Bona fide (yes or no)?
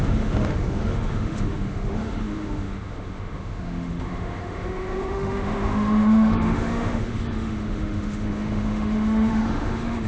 no